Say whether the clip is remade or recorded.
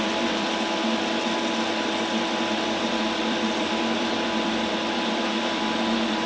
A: remade